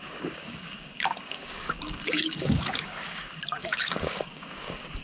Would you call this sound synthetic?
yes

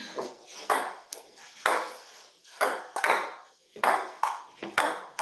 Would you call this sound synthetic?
yes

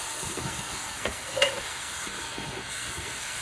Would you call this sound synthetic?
yes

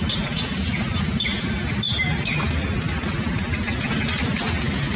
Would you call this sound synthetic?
no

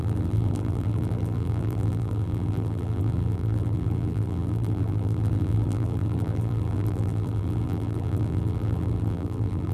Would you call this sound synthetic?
yes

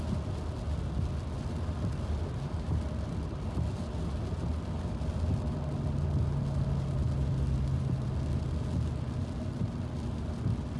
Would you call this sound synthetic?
no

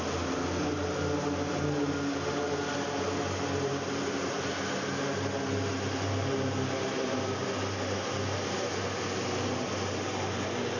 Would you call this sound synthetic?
no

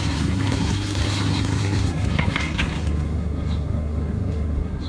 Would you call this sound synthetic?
yes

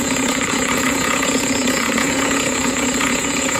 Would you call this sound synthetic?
yes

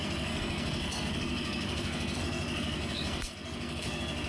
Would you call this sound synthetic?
yes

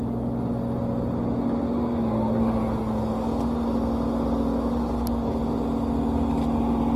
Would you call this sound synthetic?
no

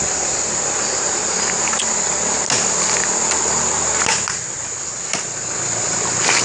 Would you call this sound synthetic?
no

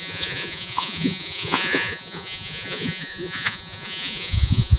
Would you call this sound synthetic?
yes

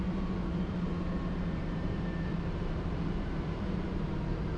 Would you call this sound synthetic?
yes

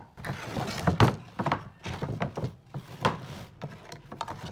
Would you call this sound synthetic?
no